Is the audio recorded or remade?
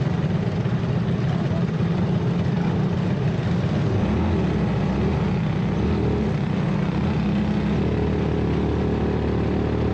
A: recorded